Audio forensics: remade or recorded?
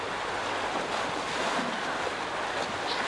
recorded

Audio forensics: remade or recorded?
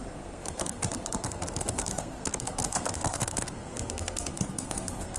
remade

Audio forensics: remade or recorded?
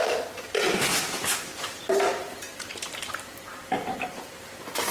remade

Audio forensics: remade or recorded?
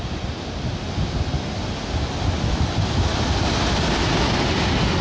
recorded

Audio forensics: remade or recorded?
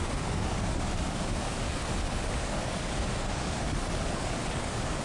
remade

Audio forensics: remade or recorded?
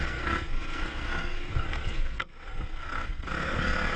remade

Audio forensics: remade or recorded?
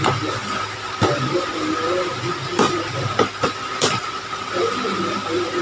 recorded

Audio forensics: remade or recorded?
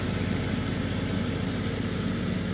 recorded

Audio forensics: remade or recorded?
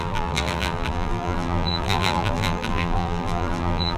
remade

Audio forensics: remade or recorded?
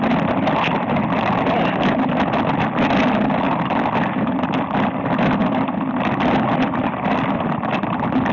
recorded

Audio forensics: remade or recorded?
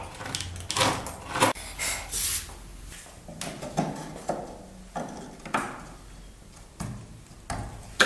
recorded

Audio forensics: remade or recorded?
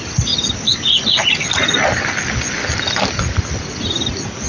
recorded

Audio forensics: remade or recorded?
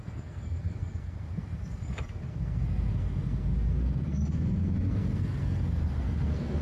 remade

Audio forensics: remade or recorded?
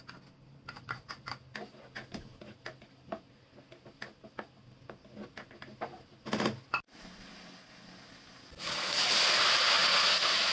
recorded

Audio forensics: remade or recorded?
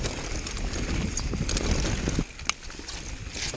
recorded